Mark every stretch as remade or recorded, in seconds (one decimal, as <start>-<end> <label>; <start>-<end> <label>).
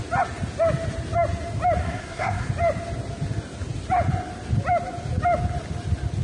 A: 0.0-1.8 recorded; 1.8-2.5 remade; 2.5-6.2 recorded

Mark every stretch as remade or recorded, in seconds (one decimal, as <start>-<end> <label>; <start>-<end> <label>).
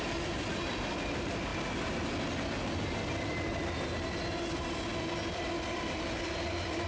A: 0.0-1.5 remade; 1.5-5.6 recorded; 5.6-6.9 remade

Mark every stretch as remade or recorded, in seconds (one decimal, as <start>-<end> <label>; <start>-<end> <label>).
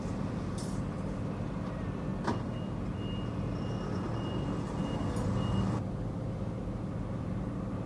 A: 0.0-7.9 recorded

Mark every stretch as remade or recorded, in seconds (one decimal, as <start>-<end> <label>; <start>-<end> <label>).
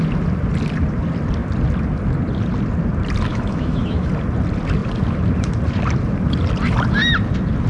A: 0.0-3.3 recorded; 3.3-4.1 remade; 4.1-7.7 recorded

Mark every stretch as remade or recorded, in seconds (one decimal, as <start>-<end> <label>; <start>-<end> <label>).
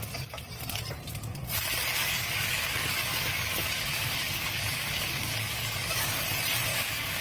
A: 0.0-1.9 recorded; 1.9-6.2 remade; 6.2-6.7 recorded; 6.7-7.2 remade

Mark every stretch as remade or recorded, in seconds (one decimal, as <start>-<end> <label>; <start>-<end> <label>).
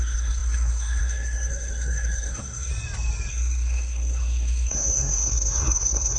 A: 0.0-2.7 remade; 2.7-3.3 recorded; 3.3-6.2 remade